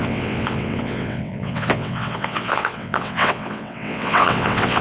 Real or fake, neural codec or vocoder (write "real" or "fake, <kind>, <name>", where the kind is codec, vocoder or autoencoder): fake, vocoder, WaveNeXt